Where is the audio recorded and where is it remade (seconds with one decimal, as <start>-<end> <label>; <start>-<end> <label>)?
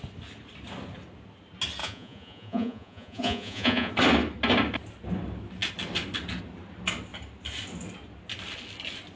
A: 0.0-1.8 recorded; 1.8-3.9 remade; 3.9-9.2 recorded